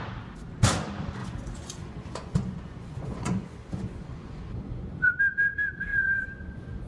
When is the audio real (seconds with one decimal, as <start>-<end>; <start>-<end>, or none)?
0.0-1.2; 5.2-5.9